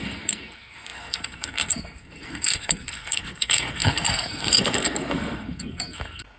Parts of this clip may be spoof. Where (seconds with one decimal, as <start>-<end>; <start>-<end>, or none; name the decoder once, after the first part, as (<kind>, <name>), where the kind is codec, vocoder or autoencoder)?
0.0-6.4 (codec, SNAC)